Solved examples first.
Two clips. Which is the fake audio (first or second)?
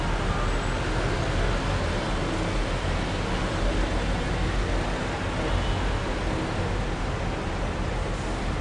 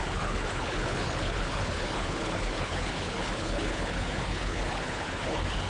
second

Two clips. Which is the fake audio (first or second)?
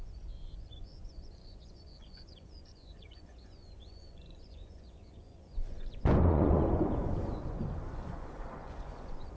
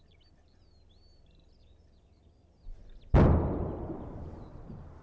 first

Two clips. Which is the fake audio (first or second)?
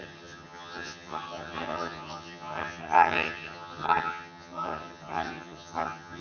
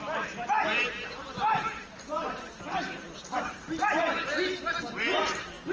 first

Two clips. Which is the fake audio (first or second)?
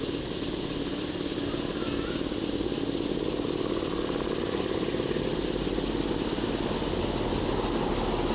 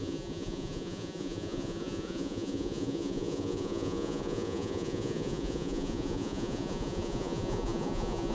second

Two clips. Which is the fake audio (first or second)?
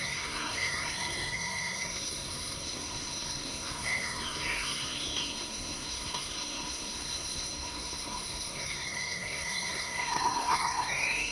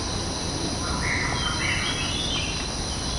first